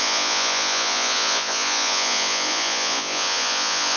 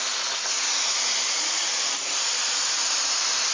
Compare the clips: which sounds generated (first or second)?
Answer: first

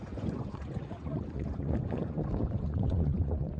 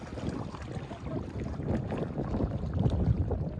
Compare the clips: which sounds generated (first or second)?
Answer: first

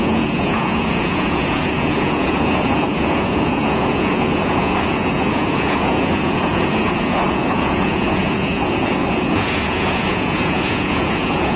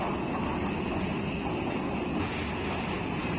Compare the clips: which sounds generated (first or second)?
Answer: first